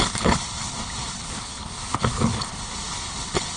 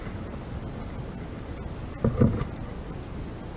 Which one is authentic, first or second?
second